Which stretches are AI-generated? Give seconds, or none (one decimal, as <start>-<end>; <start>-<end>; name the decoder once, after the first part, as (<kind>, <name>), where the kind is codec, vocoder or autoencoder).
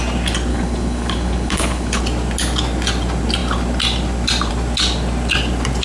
0.5-2.0 (codec, HILCodec)